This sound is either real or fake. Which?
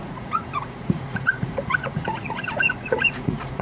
fake